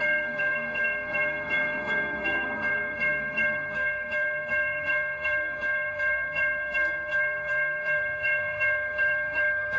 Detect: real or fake fake